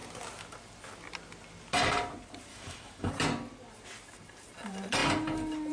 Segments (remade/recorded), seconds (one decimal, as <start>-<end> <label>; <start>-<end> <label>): 0.0-2.5 recorded; 2.5-3.1 remade; 3.1-5.7 recorded